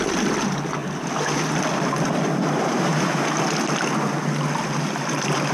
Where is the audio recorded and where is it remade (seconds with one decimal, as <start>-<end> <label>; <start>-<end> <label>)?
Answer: 0.0-5.5 recorded